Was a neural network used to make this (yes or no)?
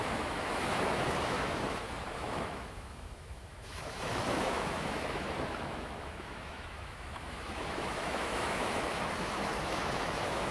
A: yes